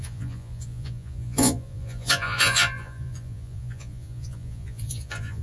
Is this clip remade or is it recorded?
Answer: remade